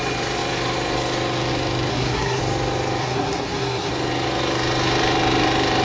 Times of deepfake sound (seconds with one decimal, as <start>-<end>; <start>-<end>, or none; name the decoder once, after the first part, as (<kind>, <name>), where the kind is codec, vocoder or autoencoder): 1.9-2.4 (codec, SNAC); 3.0-3.9